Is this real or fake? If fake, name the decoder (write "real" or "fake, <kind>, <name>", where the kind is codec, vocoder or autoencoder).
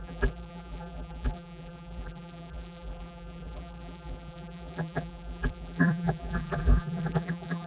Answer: fake, vocoder, BigVGAN v2